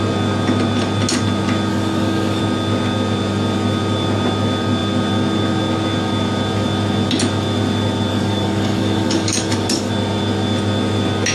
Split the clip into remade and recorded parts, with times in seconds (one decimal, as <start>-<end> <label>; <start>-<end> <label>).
0.0-1.7 recorded; 1.7-2.4 remade; 2.4-8.1 recorded; 8.1-9.9 remade; 9.9-11.3 recorded

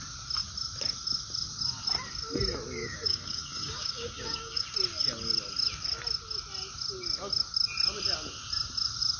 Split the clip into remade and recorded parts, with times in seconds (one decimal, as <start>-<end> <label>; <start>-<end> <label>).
0.0-2.8 recorded; 2.8-4.6 remade; 4.6-9.2 recorded

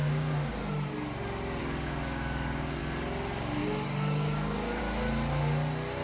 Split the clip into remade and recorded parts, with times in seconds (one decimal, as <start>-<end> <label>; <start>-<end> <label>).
0.0-0.5 remade; 0.5-1.6 recorded; 1.6-2.8 remade; 2.8-3.6 recorded; 3.6-4.8 remade; 4.8-6.0 recorded

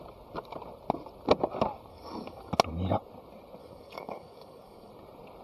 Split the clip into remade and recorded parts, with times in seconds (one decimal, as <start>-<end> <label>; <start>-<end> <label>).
0.0-1.9 recorded; 1.9-2.5 remade; 2.5-3.6 recorded; 3.6-4.9 remade; 4.9-5.4 recorded